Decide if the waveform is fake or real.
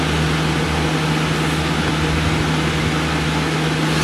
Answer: real